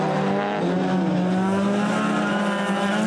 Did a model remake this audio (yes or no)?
no